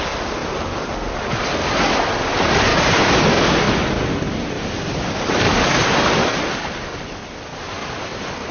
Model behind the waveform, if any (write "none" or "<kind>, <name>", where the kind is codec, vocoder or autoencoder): none